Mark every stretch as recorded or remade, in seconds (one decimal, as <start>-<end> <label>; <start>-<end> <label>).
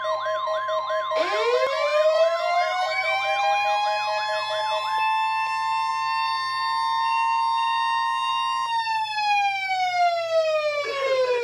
0.0-1.9 recorded; 1.9-3.4 remade; 3.4-11.4 recorded